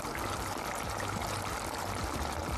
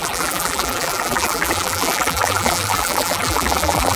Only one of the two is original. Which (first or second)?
first